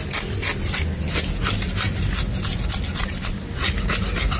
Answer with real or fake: real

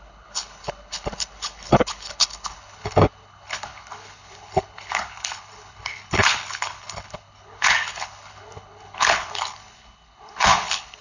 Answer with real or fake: fake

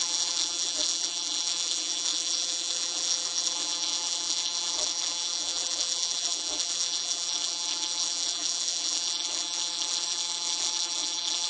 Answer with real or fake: fake